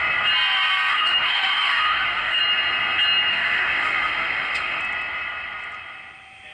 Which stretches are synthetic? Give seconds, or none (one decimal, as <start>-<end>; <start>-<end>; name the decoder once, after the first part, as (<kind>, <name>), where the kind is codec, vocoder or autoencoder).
0.9-2.4 (autoencoder, DAC-VAE); 3.3-4.8